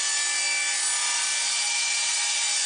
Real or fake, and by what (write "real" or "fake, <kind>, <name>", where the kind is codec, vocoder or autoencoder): real